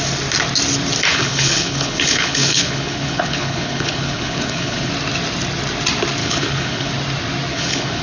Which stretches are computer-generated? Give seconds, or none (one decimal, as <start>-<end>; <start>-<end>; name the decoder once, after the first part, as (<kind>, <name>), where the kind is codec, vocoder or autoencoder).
1.1-4.9 (codec, HILCodec); 6.2-6.9; 7.5-8.0